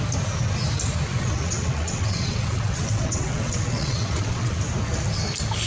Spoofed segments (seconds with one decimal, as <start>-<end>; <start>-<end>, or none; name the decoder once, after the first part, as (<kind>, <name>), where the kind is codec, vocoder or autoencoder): 1.1-4.5 (vocoder, WaveNeXt)